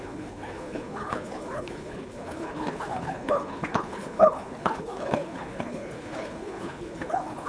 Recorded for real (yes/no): no